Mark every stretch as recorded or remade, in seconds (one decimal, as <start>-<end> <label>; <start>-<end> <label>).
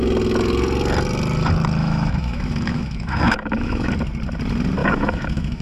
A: 0.0-1.8 recorded; 1.8-3.9 remade; 3.9-4.8 recorded; 4.8-5.6 remade